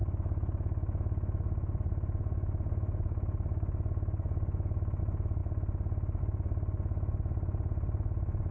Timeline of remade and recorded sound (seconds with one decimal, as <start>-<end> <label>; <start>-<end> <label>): 0.0-5.0 remade; 5.0-8.5 recorded

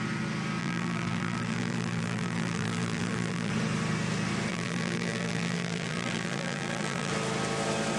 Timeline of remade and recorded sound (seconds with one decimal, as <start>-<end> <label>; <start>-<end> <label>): 0.0-0.6 recorded; 0.6-3.5 remade; 3.5-4.5 recorded; 4.5-7.1 remade; 7.1-8.0 recorded

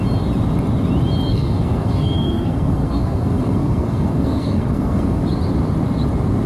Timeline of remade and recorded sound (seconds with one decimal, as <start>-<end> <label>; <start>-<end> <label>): 0.0-1.3 recorded; 1.3-5.2 remade; 5.2-6.5 recorded

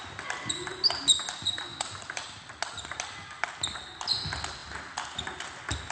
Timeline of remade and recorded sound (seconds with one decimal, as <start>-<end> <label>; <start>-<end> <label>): 0.0-1.7 recorded; 1.7-2.4 remade; 2.4-5.9 recorded

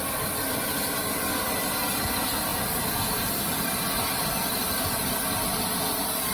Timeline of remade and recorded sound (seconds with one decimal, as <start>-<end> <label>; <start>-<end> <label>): 0.0-6.3 recorded

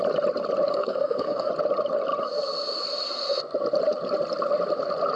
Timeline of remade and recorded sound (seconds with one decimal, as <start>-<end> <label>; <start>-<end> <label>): 0.0-0.7 recorded; 0.7-1.5 remade; 1.5-5.2 recorded

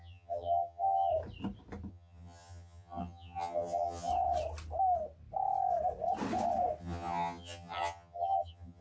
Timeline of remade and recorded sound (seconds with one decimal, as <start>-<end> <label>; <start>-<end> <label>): 0.0-1.1 remade; 1.1-1.9 recorded; 1.9-4.1 remade; 4.1-6.8 recorded; 6.8-8.8 remade